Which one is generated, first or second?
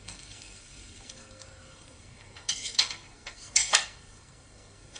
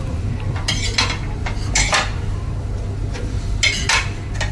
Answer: first